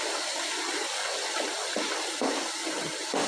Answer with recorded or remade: recorded